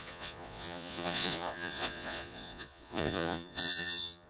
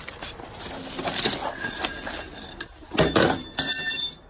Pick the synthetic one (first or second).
first